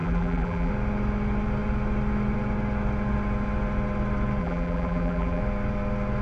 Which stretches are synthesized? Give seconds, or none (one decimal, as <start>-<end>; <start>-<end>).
0.0-0.7; 4.4-5.4